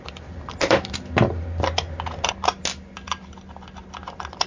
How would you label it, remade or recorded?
recorded